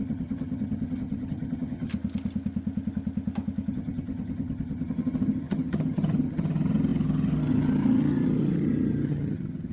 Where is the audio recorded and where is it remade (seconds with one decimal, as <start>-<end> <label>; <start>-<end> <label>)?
0.0-1.9 remade; 1.9-3.7 recorded; 3.7-9.7 remade